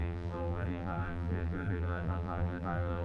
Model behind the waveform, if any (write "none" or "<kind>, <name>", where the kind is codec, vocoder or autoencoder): vocoder, BigVGAN v2